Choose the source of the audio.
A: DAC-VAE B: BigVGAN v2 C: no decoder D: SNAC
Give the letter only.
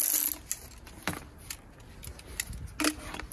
C